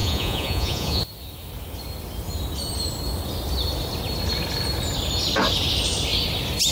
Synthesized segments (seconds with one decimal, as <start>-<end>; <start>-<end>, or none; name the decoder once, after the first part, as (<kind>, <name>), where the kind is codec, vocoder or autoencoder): 0.0-1.0 (vocoder, Vocos)